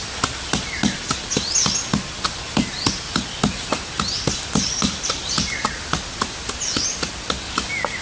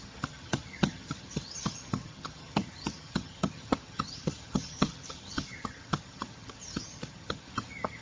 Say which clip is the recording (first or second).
first